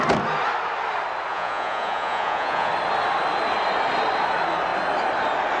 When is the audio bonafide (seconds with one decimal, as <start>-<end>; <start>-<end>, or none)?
0.0-1.3; 2.7-5.6